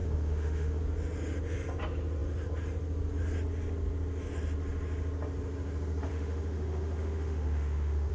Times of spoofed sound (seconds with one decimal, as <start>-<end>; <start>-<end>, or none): 0.0-0.8; 6.1-8.1